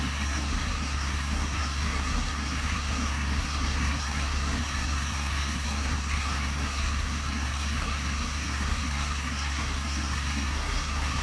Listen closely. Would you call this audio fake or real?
fake